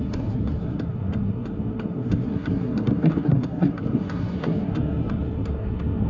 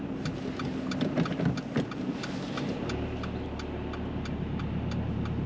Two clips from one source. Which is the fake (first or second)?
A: first